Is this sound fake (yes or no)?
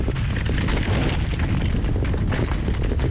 no